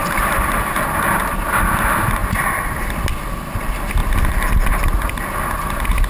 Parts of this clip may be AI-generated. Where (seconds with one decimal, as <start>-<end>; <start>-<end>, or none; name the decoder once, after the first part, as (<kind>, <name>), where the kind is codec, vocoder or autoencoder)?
0.0-1.2 (vocoder, BigVGAN v2); 2.2-2.9